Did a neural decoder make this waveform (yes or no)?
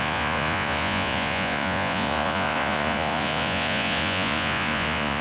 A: yes